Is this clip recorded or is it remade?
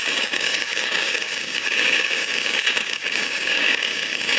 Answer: remade